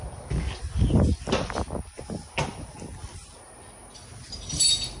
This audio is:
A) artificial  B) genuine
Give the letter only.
B